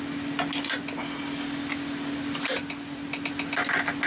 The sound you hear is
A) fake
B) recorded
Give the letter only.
B